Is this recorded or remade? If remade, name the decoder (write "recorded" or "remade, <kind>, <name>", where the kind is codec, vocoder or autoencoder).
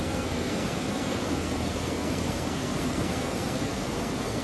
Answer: remade, codec, SNAC